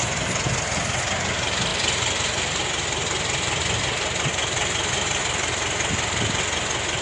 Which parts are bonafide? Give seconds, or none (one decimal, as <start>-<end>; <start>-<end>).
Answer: 0.0-7.0